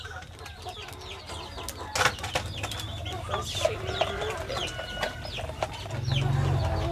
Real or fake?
real